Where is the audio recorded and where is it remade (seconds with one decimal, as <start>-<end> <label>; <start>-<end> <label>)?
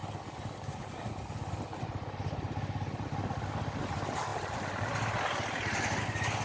0.0-6.4 recorded